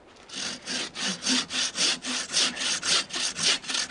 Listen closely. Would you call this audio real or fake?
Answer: real